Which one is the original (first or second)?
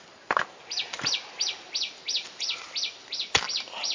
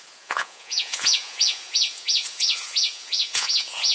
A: first